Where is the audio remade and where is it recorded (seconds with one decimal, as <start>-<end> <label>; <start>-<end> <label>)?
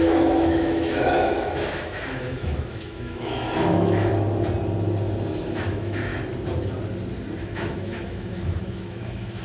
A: 0.0-4.1 remade; 4.1-5.4 recorded; 5.4-6.1 remade; 6.1-7.4 recorded; 7.4-9.4 remade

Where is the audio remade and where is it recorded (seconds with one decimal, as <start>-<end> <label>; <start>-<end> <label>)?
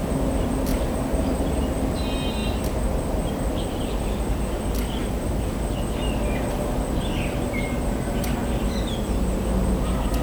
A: 0.0-0.7 recorded; 0.7-1.4 remade; 1.4-10.2 recorded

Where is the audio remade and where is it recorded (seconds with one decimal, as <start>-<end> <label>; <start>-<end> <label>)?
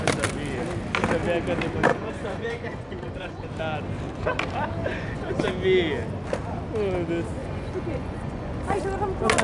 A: 0.0-1.9 recorded; 1.9-3.5 remade; 3.5-4.8 recorded; 4.8-5.5 remade; 5.5-7.4 recorded; 7.4-8.8 remade; 8.8-9.4 recorded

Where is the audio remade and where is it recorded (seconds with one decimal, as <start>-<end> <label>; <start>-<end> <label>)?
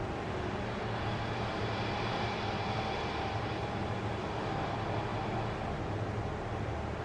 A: 0.0-7.0 recorded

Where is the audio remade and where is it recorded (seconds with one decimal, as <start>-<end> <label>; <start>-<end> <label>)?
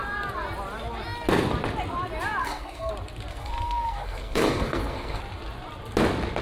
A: 0.0-2.4 recorded; 2.4-2.9 remade; 2.9-3.3 recorded; 3.3-5.2 remade; 5.2-6.4 recorded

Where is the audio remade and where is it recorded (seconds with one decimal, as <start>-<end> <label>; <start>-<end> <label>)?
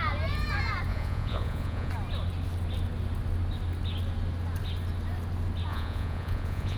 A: 0.0-0.9 recorded; 0.9-1.9 remade; 1.9-5.7 recorded; 5.7-6.8 remade